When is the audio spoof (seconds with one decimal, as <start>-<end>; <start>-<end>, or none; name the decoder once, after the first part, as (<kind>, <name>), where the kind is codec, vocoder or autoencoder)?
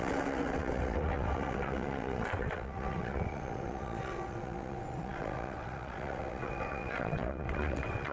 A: 0.0-8.1 (vocoder, WaveNeXt)